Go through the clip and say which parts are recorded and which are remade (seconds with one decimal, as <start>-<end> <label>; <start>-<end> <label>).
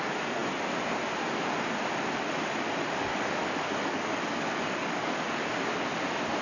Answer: 0.0-3.1 recorded; 3.1-5.5 remade; 5.5-6.4 recorded